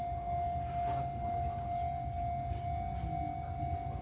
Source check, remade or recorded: recorded